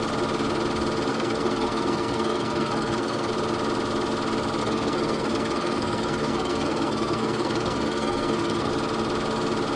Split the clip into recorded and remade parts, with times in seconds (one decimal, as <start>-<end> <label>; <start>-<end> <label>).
0.0-1.1 recorded; 1.1-3.3 remade; 3.3-4.6 recorded; 4.6-8.7 remade; 8.7-9.8 recorded